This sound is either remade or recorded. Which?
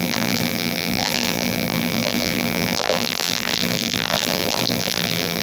remade